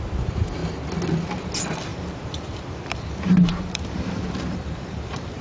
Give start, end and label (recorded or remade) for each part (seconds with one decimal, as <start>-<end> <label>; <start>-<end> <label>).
0.0-1.9 recorded; 1.9-5.4 remade